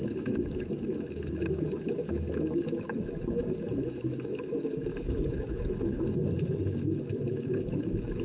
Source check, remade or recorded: remade